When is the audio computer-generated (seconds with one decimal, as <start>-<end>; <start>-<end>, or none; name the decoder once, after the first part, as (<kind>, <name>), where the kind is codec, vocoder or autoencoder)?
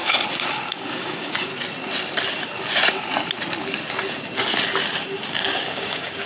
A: 0.5-1.5 (codec, DAC); 5.3-6.3